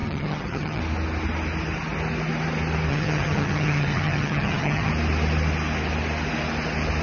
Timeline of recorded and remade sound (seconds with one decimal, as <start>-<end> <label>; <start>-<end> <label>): 0.0-0.8 remade; 0.8-2.9 recorded; 2.9-4.9 remade; 4.9-7.0 recorded